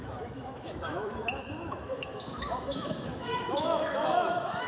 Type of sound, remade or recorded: remade